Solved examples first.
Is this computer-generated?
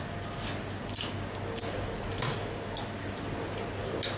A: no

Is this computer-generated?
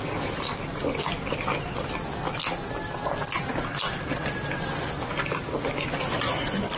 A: no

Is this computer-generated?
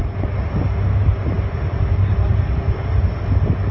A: no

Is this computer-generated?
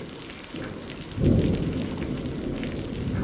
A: no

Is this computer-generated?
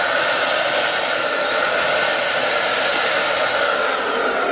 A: no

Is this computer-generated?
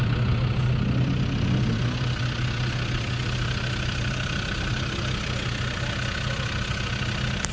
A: no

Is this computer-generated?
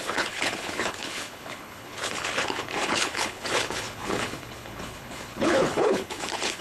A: yes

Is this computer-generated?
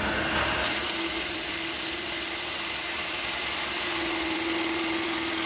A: yes